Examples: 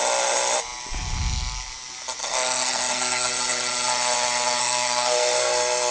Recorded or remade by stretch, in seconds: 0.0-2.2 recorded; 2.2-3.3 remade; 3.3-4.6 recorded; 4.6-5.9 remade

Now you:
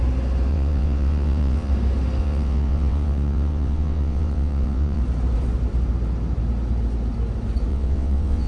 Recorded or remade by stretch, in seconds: 0.0-0.5 recorded; 0.5-1.7 remade; 1.7-2.2 recorded; 2.2-5.0 remade; 5.0-7.7 recorded; 7.7-8.5 remade

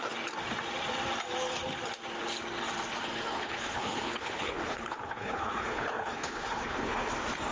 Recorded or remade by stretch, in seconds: 0.0-3.4 recorded; 3.4-7.1 remade; 7.1-7.5 recorded

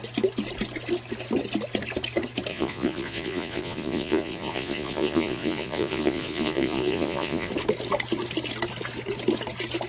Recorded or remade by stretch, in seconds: 0.0-2.5 recorded; 2.5-7.5 remade; 7.5-9.9 recorded